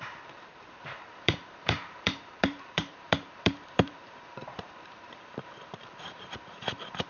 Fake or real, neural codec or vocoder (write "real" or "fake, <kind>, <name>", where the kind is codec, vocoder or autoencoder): fake, vocoder, BigVGAN v2